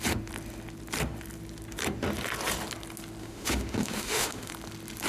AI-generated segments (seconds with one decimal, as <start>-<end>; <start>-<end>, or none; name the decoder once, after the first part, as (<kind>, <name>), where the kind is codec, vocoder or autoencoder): 3.2-4.5 (autoencoder, DAC-VAE)